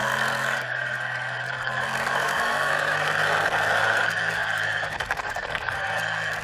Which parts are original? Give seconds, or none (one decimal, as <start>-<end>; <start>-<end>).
none